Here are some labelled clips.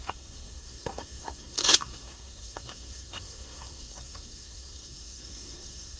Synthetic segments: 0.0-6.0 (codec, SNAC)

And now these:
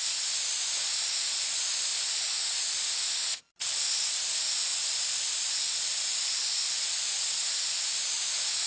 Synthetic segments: none

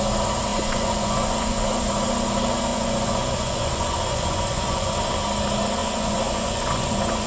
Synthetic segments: 0.5-1.8 (vocoder, Vocos); 2.7-4.9; 5.8-7.3

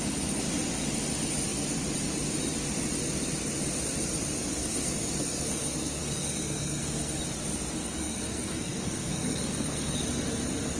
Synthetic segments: 4.6-7.2 (codec, SNAC); 7.8-10.0

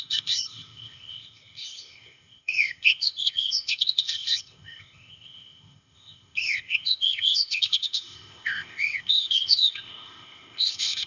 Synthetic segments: 0.0-11.1 (codec, ZipCodec)

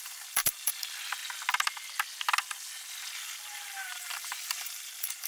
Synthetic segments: 0.0-1.2 (vocoder, BigVGAN v2); 3.2-5.3

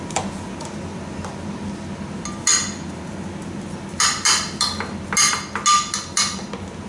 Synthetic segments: none

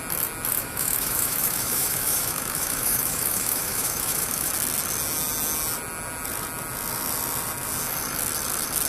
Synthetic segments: 0.5-4.5 (autoencoder, DAC-VAE)